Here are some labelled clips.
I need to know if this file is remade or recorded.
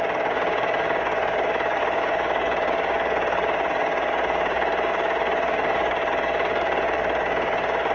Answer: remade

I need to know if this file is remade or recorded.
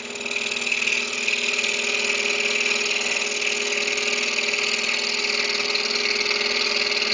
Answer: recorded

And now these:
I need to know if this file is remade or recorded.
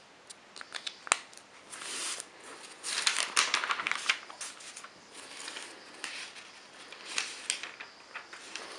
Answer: recorded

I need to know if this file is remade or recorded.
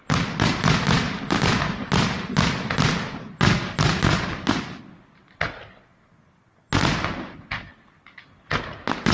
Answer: recorded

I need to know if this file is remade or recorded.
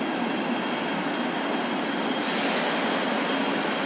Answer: recorded